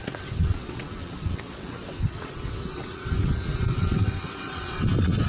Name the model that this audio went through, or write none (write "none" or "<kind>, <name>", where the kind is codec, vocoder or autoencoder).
vocoder, WaveNeXt